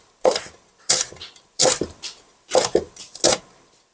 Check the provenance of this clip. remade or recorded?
recorded